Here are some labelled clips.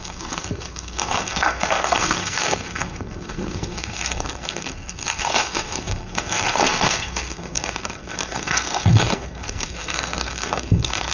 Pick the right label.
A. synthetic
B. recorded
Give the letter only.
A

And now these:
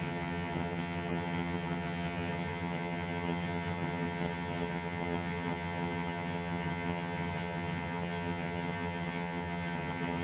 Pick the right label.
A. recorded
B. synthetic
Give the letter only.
B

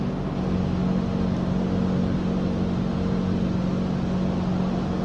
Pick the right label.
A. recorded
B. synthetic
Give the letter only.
A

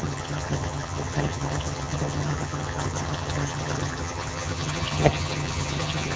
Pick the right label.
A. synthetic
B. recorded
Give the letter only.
A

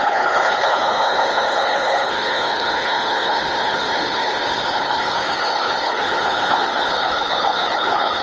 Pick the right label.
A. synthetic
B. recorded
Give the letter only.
A